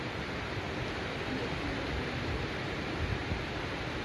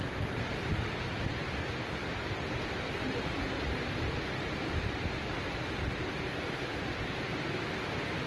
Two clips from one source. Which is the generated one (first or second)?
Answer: second